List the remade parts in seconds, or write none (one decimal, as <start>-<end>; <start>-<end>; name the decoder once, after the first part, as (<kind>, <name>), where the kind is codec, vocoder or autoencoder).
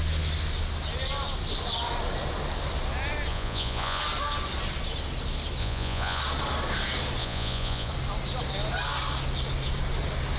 3.3-4.0 (vocoder, Vocos); 5.6-6.2; 7.2-7.9